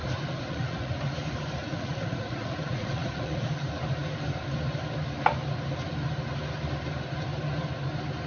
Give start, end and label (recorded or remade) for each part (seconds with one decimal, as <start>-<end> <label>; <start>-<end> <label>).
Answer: 0.0-1.0 remade; 1.0-1.6 recorded; 1.6-3.5 remade; 3.5-8.3 recorded